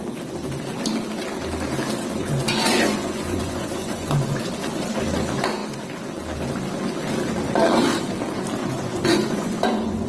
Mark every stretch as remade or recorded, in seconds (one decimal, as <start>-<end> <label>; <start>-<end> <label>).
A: 0.0-2.2 recorded; 2.2-4.4 remade; 4.4-8.6 recorded; 8.6-10.1 remade